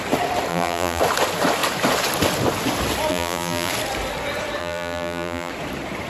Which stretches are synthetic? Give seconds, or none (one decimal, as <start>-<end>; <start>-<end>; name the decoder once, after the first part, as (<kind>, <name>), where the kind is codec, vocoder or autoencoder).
0.5-1.0 (vocoder, BigVGAN v2); 3.1-3.7; 4.6-5.5

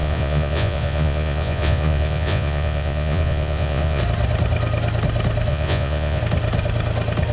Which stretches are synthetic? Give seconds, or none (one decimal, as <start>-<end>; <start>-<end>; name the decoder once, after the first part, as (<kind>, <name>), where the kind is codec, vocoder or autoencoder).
0.0-4.0 (vocoder, Vocos); 5.5-6.2

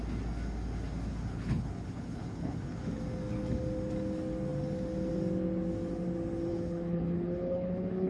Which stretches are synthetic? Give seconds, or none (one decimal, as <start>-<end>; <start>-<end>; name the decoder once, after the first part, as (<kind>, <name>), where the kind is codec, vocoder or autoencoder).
1.1-2.9 (codec, HILCodec); 6.5-8.1

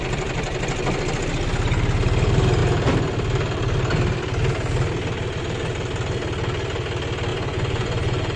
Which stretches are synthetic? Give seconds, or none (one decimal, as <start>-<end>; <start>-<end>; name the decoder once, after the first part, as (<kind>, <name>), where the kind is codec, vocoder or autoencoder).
7.3-8.4 (vocoder, Vocos)